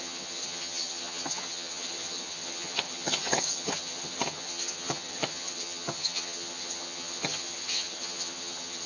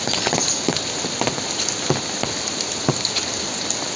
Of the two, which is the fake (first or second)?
first